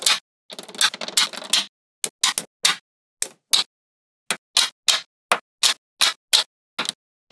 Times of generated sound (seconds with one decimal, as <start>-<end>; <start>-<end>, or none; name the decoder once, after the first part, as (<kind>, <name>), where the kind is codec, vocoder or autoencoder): none